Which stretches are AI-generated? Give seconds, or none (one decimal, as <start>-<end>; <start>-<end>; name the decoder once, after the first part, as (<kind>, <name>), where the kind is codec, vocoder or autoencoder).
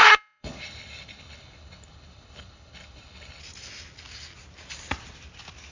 0.0-3.4 (codec, HILCodec)